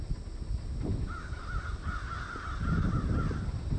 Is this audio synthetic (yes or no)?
no